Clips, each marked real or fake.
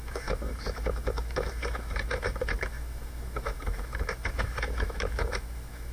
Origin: fake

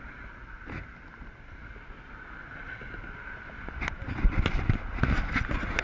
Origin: real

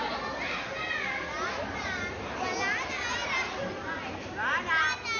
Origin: real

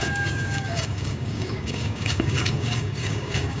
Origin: fake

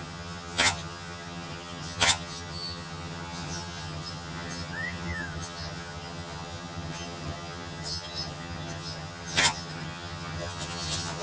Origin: fake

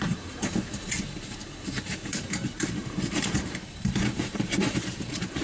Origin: fake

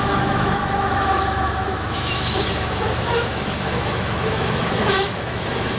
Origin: fake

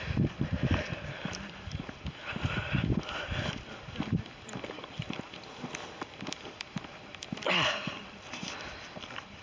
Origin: fake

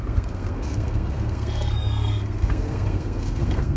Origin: fake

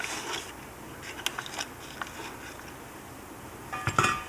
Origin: real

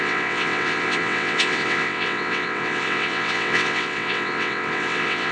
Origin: fake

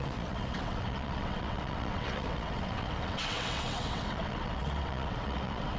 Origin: fake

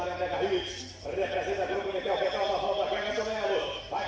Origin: real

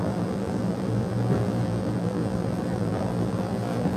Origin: fake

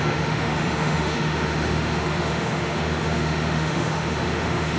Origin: fake